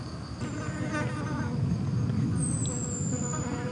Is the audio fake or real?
real